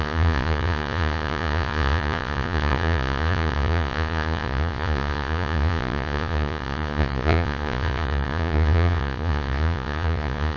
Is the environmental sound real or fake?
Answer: fake